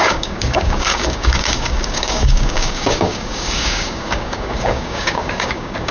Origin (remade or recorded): remade